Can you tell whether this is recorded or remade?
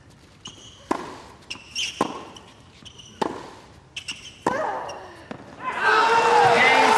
recorded